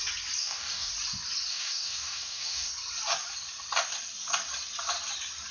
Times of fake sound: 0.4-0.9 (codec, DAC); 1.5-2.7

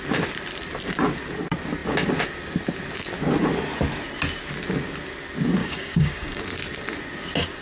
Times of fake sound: 5.6-6.4 (codec, DAC)

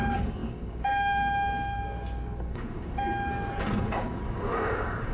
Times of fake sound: 0.0-5.1 (codec, DAC)

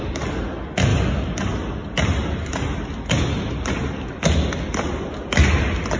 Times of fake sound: none